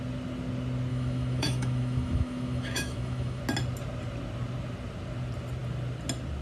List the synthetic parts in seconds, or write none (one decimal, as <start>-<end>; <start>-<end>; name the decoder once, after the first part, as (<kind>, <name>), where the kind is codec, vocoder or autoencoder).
0.9-3.4 (autoencoder, DAC-VAE)